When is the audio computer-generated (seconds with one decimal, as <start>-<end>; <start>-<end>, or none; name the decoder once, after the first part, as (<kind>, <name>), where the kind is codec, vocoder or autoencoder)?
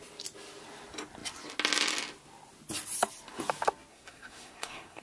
3.9-5.0 (codec, SNAC)